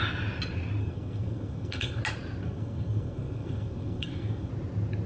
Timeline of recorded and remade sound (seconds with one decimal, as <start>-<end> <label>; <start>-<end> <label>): 0.0-0.8 recorded; 0.8-2.0 remade; 2.0-2.4 recorded; 2.4-4.5 remade; 4.5-5.1 recorded